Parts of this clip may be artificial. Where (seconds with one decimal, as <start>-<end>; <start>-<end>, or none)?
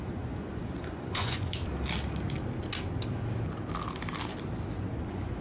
0.0-1.6; 4.8-5.4